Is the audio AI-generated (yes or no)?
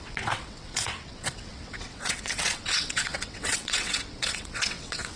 yes